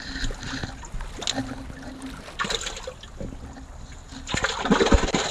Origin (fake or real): real